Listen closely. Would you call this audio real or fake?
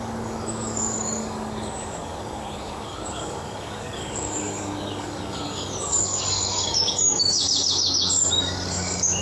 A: fake